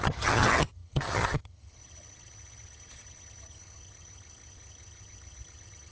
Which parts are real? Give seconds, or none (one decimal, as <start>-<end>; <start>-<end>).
none